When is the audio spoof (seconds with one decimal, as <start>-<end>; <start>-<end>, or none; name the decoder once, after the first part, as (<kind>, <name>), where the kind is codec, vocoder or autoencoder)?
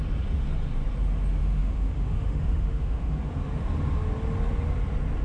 1.4-3.2 (autoencoder, DAC-VAE)